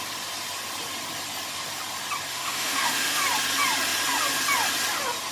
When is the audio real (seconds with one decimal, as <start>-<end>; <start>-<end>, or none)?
0.0-2.3; 3.2-5.3